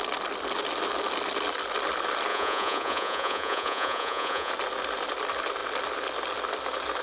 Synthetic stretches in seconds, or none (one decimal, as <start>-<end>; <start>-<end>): 2.3-4.5